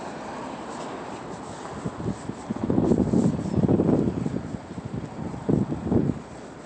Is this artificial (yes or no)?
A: no